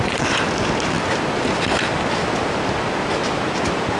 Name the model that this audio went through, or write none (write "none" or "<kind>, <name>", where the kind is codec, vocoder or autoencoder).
none